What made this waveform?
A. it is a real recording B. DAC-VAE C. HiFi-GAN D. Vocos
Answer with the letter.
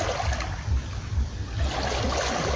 A